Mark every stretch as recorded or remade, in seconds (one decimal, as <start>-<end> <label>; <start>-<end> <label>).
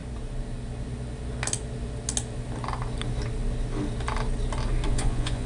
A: 0.0-4.9 recorded; 4.9-5.5 remade